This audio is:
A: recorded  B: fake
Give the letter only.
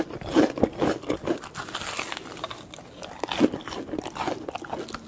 A